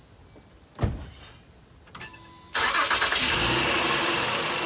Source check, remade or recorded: recorded